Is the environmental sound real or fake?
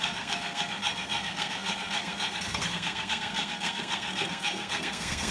fake